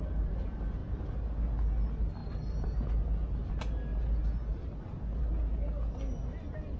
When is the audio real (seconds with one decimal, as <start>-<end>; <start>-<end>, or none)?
0.0-6.8